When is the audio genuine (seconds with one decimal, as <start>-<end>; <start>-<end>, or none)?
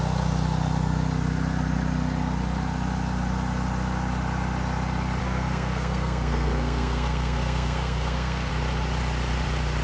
0.0-5.2; 8.5-9.8